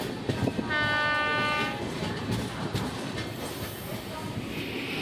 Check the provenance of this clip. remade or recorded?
recorded